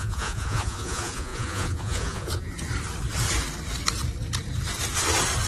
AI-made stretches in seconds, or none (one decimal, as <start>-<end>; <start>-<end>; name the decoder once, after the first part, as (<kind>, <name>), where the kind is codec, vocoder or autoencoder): 0.0-2.5 (vocoder, Vocos)